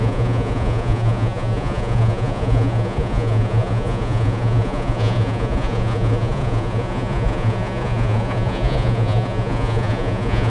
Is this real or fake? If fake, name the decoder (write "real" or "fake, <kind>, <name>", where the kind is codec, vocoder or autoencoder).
fake, vocoder, Vocos